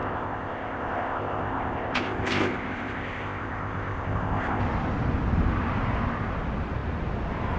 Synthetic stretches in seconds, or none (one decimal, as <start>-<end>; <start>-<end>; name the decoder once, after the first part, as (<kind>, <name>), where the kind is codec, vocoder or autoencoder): 0.0-4.6 (codec, ZipCodec)